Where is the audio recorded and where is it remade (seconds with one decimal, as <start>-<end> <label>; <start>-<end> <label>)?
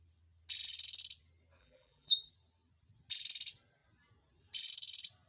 0.0-1.6 recorded; 1.6-2.3 remade; 2.3-5.3 recorded